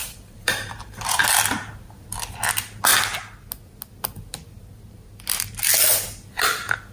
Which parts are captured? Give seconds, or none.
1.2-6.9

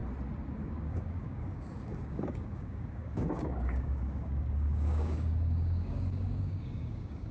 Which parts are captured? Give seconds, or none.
0.0-0.5

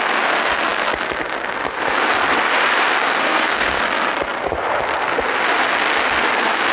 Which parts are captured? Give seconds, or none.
0.0-3.2; 3.8-6.7